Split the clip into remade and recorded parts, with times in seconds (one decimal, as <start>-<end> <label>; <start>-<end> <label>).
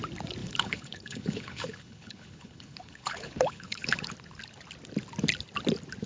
0.0-0.4 recorded; 0.4-4.1 remade; 4.1-6.1 recorded